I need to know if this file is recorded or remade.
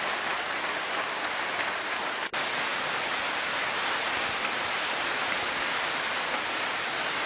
recorded